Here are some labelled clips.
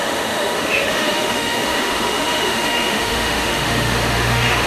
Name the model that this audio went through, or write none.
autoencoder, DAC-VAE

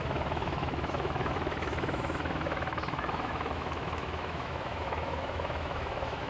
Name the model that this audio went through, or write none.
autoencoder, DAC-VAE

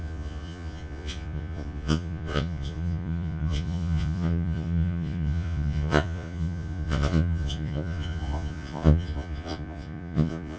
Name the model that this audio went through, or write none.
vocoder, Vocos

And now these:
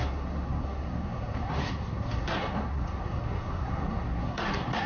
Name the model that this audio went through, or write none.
codec, SNAC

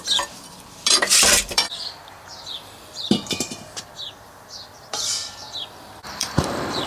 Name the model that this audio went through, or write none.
vocoder, BigVGAN v2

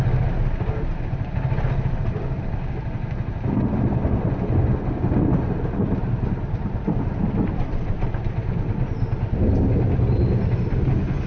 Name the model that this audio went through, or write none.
none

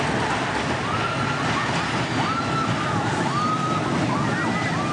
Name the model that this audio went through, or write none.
none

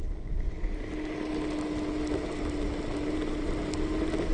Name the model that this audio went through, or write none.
none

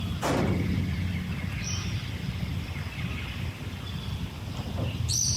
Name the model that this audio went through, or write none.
none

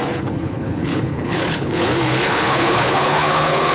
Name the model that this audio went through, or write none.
codec, HILCodec